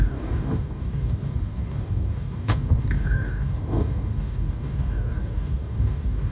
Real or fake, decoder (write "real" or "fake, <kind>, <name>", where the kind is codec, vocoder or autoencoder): fake, codec, DAC